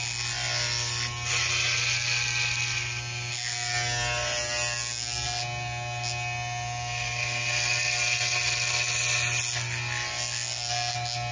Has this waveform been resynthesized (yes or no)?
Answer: no